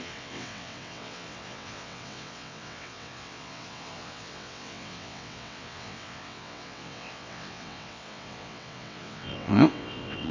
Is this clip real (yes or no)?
no